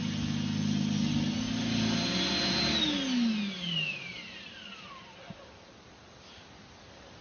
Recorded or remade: recorded